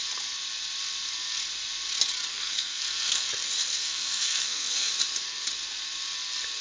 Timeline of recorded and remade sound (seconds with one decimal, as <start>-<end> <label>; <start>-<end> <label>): 0.0-2.3 recorded; 2.3-3.3 remade; 3.3-3.7 recorded; 3.7-4.9 remade; 4.9-6.6 recorded